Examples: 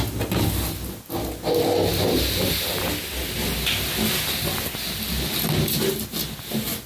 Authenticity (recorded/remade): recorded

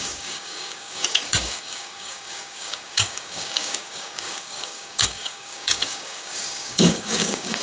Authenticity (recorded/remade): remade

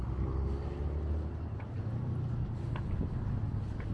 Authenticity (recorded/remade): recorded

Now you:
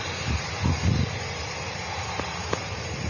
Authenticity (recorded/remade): recorded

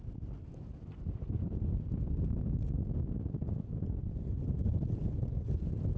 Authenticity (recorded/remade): recorded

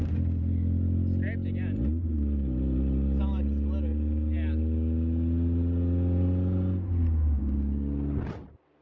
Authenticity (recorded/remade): recorded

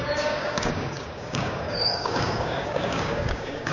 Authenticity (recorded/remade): remade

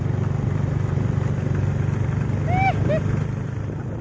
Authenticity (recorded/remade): recorded